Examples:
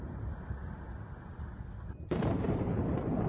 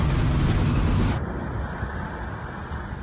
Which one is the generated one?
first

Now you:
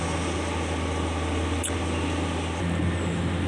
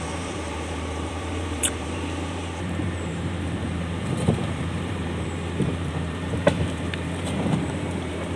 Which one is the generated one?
second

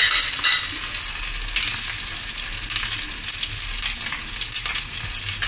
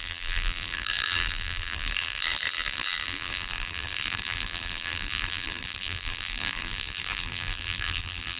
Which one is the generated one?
second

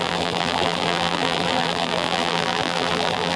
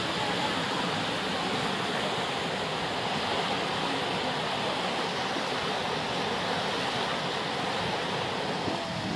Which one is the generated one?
first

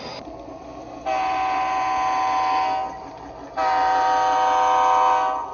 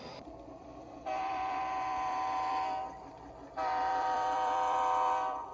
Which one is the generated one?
second